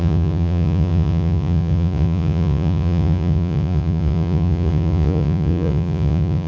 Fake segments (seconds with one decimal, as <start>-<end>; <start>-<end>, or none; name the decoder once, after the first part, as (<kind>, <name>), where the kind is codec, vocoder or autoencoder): 0.0-6.5 (vocoder, Vocos)